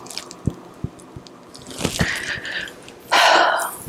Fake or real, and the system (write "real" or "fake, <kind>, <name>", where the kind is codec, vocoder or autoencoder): real